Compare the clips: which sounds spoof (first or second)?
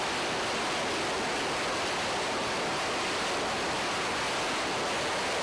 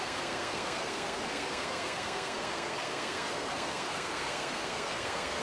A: second